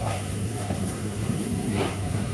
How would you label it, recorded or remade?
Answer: remade